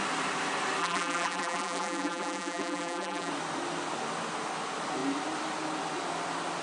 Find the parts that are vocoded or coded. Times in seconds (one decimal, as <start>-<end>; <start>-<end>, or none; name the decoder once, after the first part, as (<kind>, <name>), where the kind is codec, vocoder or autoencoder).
0.8-3.3 (vocoder, BigVGAN v2)